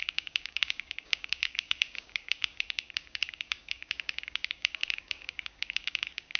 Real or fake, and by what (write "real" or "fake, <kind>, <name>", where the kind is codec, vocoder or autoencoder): fake, codec, DAC